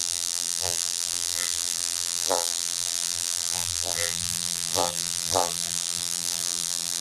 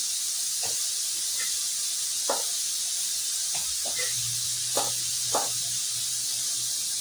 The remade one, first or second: first